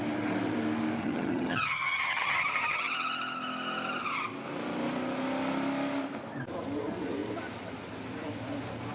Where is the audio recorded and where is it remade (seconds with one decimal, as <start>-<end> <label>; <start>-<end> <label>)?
0.0-1.0 recorded; 1.0-2.8 remade; 2.8-8.9 recorded